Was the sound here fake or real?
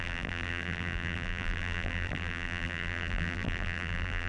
fake